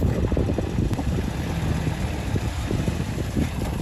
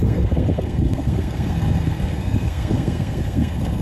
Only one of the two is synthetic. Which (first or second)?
second